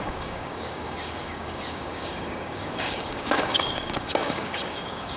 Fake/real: fake